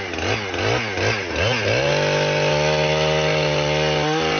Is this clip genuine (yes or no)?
yes